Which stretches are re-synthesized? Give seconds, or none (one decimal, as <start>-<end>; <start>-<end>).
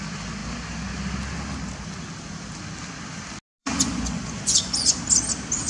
3.6-5.0